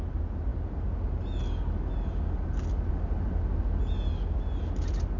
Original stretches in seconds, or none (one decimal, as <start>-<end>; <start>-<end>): 0.0-5.2